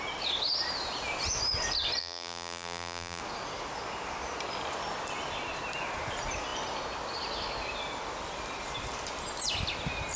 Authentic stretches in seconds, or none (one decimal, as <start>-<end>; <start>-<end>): 0.0-2.0; 3.2-10.2